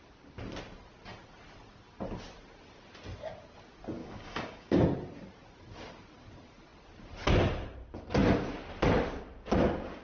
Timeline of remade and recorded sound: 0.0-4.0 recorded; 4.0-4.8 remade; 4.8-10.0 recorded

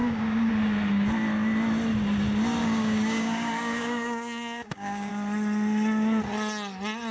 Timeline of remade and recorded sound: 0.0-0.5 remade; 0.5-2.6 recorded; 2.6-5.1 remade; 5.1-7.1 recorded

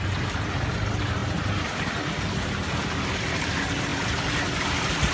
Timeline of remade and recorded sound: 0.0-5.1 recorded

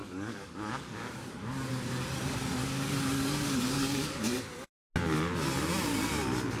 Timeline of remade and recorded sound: 0.0-1.7 remade; 1.7-2.6 recorded; 2.6-4.2 remade; 4.2-6.6 recorded

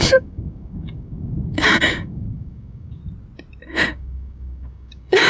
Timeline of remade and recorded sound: 0.0-3.0 remade; 3.0-3.9 recorded; 3.9-5.3 remade